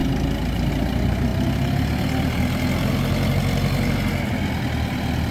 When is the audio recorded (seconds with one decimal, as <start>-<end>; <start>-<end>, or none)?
0.0-5.3